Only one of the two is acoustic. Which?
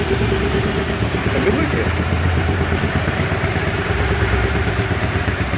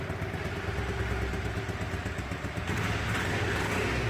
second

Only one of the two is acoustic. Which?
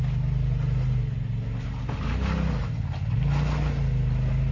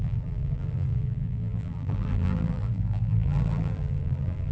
first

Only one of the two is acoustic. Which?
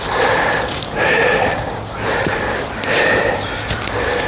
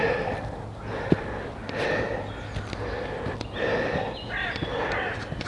second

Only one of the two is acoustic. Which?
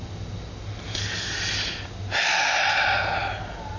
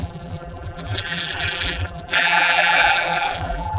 first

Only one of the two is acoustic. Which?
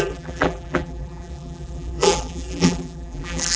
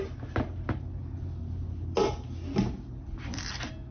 second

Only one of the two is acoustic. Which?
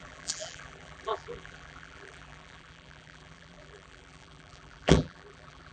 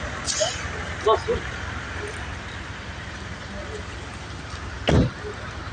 second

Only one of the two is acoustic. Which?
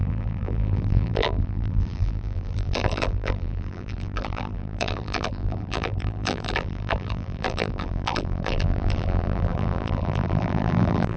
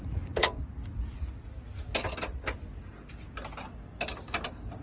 second